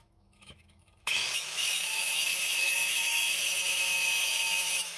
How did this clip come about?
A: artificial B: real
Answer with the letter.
A